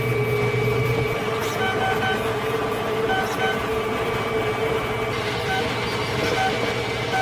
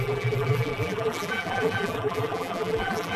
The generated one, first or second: second